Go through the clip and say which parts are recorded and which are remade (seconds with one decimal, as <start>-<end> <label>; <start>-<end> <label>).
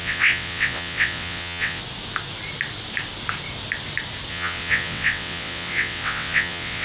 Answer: 0.0-1.8 remade; 1.8-4.3 recorded; 4.3-6.8 remade